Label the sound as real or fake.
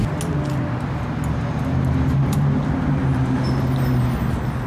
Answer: real